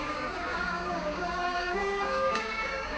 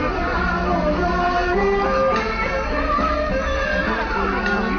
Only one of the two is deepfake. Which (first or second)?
first